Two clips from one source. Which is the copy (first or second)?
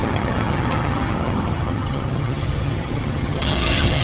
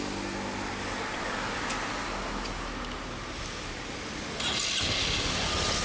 first